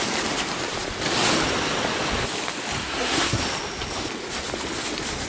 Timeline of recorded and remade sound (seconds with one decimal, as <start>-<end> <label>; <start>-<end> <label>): 0.0-2.8 recorded; 2.8-3.4 remade; 3.4-5.3 recorded